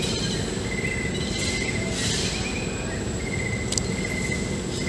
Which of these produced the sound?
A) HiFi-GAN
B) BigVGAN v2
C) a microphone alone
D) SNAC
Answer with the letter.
C